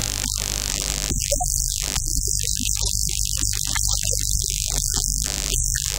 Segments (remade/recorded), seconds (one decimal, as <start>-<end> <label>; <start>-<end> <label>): 0.0-0.7 recorded; 0.7-2.1 remade; 2.1-4.4 recorded; 4.4-6.0 remade